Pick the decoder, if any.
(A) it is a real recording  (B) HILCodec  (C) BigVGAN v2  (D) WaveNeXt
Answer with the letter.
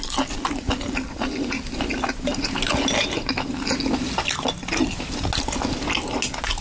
A